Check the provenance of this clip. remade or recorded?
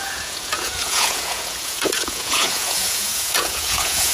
remade